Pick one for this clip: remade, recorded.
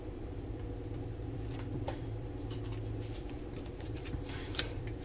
remade